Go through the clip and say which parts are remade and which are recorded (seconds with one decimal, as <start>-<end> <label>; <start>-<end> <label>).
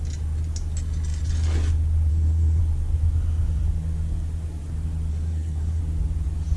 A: 0.0-2.1 recorded; 2.1-2.6 remade; 2.6-5.1 recorded; 5.1-5.8 remade; 5.8-6.6 recorded